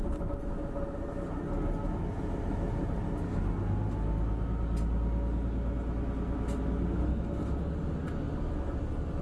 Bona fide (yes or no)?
yes